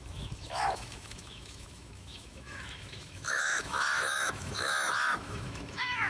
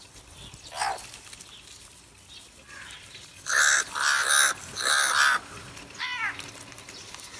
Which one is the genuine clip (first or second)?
second